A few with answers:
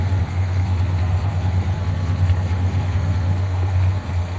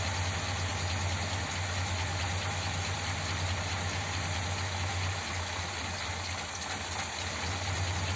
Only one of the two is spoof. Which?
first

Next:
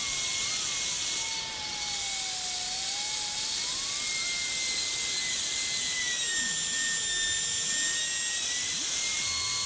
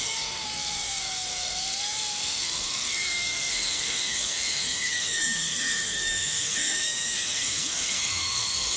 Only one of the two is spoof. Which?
second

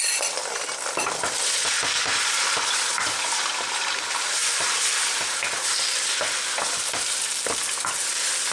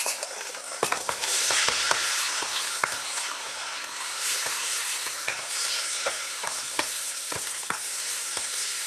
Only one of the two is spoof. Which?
second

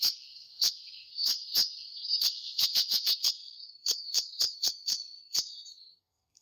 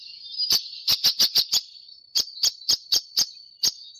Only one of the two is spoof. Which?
first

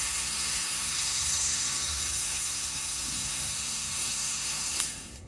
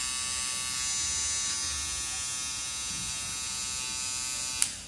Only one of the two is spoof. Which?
first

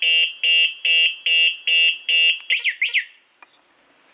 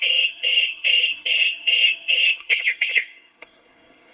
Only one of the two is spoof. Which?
second